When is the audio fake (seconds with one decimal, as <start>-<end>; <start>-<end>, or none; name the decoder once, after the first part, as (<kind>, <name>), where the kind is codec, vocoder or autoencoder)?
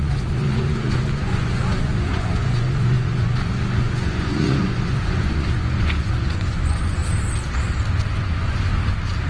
0.0-7.0 (vocoder, Vocos); 8.0-8.7